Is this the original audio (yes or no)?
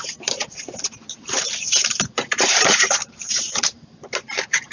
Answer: no